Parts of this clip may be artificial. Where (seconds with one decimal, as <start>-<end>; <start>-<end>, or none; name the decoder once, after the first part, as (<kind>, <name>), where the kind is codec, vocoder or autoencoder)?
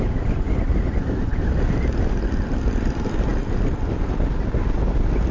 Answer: none